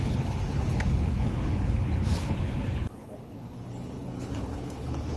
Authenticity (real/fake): fake